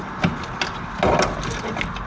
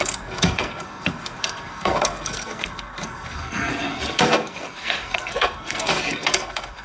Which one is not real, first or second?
second